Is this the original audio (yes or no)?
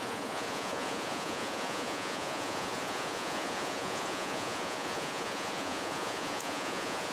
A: no